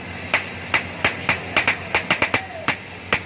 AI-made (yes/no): no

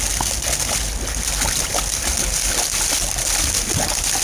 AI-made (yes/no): no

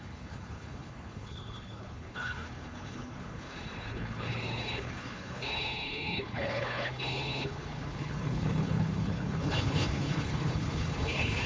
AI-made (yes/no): yes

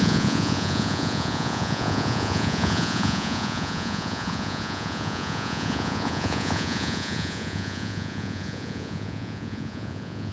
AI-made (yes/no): yes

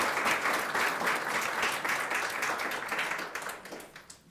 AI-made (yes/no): no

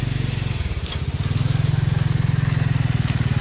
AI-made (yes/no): no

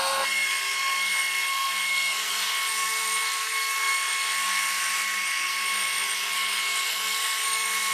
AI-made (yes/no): yes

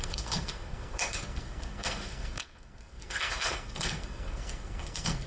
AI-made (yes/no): yes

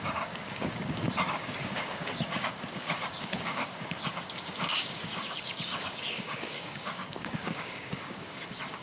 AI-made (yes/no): yes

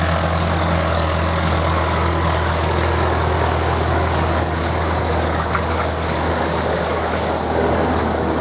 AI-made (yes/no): yes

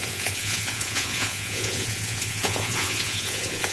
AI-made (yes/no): yes